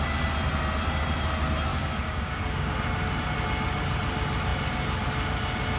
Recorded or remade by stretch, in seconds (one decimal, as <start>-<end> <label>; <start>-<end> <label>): 0.0-1.7 recorded; 1.7-2.7 remade; 2.7-5.8 recorded